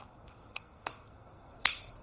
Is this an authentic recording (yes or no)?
no